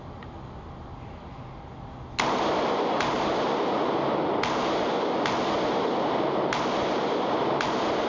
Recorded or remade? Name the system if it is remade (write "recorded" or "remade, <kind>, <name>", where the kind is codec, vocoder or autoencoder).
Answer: recorded